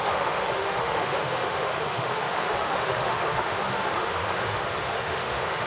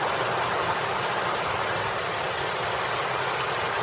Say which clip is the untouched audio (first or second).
second